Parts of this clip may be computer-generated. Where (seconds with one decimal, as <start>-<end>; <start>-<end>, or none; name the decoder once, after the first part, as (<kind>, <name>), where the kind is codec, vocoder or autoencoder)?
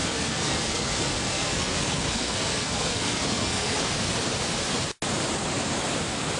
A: 0.0-3.8 (codec, SNAC)